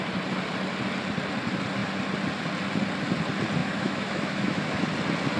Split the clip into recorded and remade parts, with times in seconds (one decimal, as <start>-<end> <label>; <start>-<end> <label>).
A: 0.0-3.6 recorded; 3.6-4.7 remade; 4.7-5.4 recorded